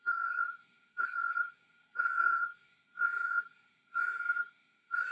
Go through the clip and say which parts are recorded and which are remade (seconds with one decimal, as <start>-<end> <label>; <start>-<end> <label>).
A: 0.0-5.1 remade